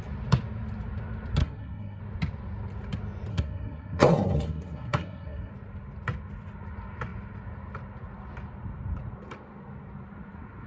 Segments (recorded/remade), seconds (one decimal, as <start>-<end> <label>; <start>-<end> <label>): 0.0-1.4 recorded; 1.4-2.0 remade; 2.0-3.3 recorded; 3.3-5.5 remade; 5.5-10.7 recorded